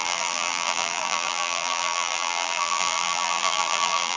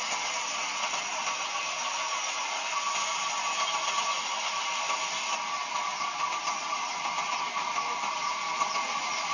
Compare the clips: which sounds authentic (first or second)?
second